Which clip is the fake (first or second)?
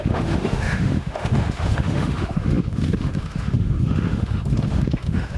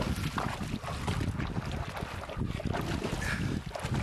first